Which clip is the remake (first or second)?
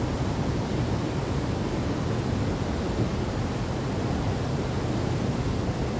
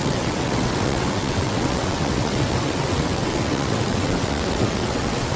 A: second